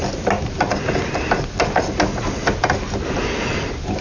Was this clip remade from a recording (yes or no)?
no